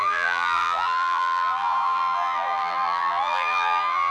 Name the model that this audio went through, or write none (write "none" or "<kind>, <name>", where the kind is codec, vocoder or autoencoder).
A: vocoder, BigVGAN v2